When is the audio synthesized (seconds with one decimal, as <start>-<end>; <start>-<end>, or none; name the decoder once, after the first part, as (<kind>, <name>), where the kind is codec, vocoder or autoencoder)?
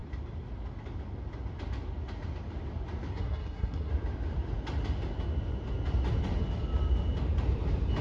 3.1-3.9 (codec, SNAC)